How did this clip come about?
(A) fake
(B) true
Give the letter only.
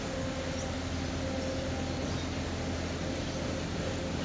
B